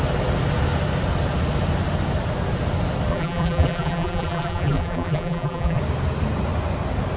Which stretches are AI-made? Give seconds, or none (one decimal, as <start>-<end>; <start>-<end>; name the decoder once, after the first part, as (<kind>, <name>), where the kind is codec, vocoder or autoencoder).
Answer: 3.1-5.8 (vocoder, BigVGAN v2)